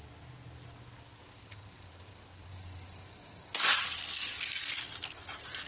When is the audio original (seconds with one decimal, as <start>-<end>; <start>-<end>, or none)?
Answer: 0.0-1.2; 4.0-5.7